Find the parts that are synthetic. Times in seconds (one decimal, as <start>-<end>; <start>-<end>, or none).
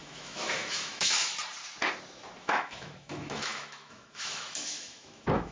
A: 0.0-1.3; 2.4-5.5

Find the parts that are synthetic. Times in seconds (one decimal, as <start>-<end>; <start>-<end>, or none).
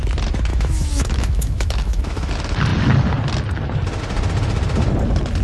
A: 0.5-2.3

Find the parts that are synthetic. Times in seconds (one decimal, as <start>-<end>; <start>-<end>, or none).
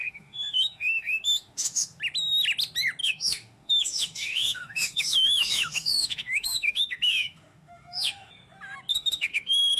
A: 0.0-2.0; 3.0-8.3; 8.9-9.8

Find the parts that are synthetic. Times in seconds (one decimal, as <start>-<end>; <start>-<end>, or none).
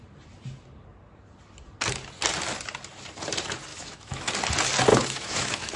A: 3.7-4.3; 4.9-5.8